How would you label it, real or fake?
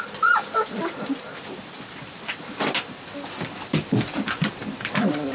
fake